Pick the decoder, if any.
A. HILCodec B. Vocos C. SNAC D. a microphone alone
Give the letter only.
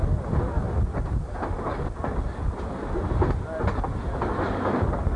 D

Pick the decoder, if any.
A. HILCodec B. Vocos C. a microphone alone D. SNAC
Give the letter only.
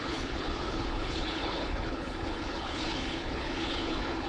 A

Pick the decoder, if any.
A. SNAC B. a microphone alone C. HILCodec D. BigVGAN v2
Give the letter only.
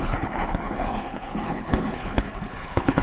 C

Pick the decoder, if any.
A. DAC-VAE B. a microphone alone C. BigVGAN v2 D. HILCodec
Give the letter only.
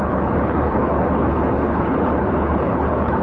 D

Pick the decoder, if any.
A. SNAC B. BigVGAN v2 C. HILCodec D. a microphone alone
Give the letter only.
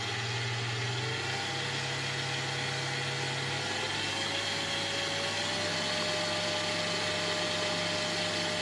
D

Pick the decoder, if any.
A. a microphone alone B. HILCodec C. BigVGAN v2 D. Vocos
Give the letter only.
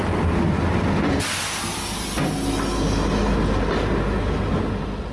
A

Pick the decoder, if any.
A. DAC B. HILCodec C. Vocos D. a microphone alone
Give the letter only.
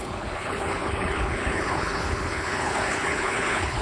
B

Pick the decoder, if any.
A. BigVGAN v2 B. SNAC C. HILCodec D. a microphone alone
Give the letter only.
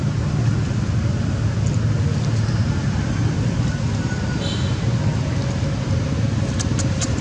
D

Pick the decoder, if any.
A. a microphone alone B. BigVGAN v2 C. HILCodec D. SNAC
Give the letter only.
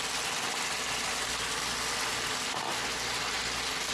A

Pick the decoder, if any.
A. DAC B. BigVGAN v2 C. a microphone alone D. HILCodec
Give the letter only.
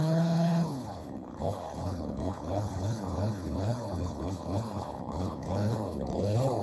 D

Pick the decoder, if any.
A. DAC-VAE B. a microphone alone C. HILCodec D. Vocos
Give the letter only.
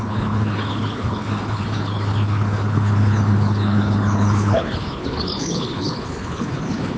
C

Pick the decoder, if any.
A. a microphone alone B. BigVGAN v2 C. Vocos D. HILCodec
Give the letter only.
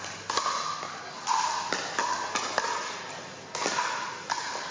A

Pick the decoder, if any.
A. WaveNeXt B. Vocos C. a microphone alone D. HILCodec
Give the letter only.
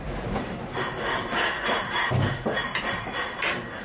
C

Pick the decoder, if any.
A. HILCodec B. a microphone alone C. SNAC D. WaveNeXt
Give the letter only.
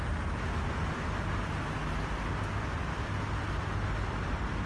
B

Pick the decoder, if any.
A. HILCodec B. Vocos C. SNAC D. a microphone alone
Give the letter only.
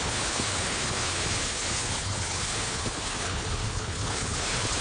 A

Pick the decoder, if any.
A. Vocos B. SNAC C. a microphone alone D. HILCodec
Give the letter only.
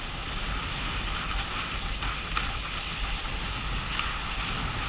C